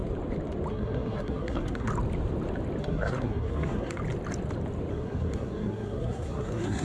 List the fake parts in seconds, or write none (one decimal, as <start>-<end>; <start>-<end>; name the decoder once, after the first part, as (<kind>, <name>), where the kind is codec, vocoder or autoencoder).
0.7-1.9 (codec, SNAC); 2.8-4.0; 4.9-6.8